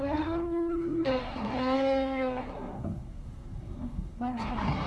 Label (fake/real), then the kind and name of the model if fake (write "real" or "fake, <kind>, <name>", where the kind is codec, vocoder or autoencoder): fake, codec, SNAC